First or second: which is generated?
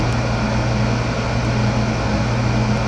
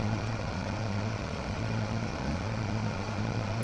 second